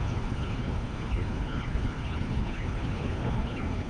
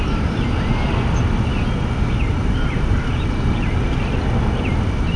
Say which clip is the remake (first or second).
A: first